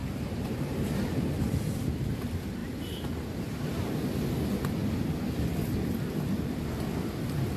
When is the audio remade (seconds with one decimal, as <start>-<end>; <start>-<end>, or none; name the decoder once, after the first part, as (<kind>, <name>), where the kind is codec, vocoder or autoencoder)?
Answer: 0.0-1.0 (vocoder, BigVGAN v2)